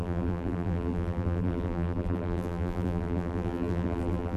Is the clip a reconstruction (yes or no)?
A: yes